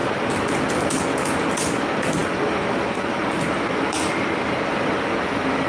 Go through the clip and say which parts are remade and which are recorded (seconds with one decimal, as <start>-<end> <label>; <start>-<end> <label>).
0.0-5.7 recorded